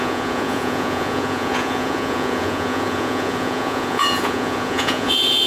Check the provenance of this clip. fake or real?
fake